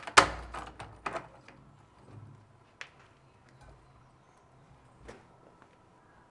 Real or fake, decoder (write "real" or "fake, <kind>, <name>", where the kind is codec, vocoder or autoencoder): real